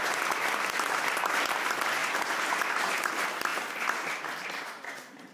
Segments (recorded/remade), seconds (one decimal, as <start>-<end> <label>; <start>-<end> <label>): 0.0-5.3 recorded